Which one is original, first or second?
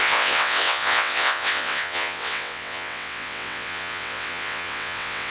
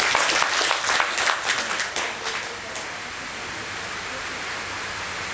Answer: second